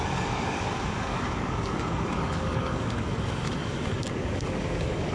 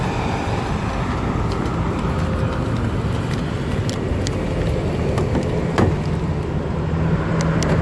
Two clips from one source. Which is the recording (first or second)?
second